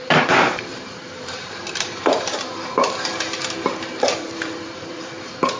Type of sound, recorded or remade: remade